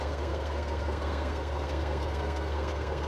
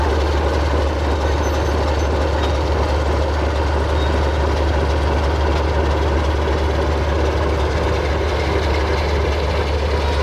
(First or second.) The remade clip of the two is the first